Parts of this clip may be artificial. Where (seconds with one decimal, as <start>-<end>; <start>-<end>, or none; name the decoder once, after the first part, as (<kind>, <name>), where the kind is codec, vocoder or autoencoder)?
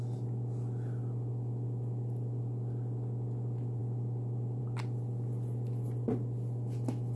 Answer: none